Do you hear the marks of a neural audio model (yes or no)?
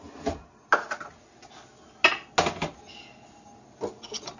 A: no